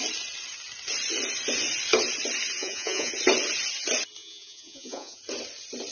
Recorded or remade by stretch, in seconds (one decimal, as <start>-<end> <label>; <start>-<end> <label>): 0.0-2.6 recorded; 2.6-3.1 remade; 3.1-4.2 recorded; 4.2-5.2 remade; 5.2-5.9 recorded